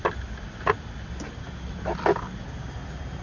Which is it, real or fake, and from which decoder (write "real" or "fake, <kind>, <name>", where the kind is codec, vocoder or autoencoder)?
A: real